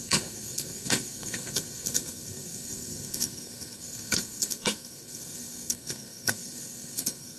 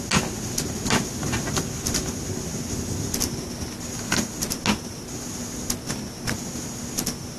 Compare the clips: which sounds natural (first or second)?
second